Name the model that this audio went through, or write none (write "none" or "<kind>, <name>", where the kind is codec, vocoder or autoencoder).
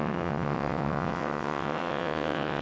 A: vocoder, WaveNeXt